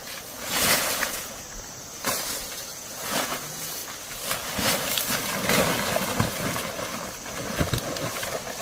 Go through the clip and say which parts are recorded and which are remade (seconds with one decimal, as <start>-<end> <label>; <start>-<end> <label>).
0.0-3.8 remade; 3.8-8.6 recorded